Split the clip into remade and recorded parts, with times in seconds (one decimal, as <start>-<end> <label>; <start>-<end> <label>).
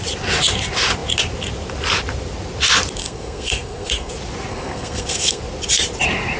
0.0-3.0 recorded; 3.0-4.1 remade; 4.1-4.5 recorded; 4.5-5.4 remade; 5.4-6.4 recorded